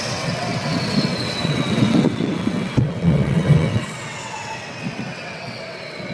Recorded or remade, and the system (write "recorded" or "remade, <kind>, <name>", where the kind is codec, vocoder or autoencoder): remade, vocoder, WaveNeXt